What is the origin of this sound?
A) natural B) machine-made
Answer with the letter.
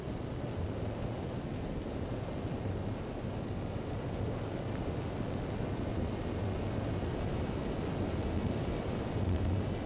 A